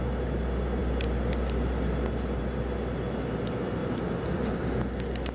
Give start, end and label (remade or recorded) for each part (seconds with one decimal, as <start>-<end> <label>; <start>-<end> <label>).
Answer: 0.0-3.8 recorded; 3.8-4.7 remade; 4.7-5.3 recorded